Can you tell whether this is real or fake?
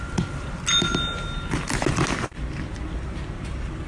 real